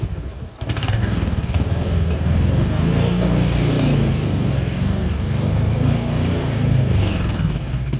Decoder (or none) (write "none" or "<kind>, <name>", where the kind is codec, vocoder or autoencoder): codec, DAC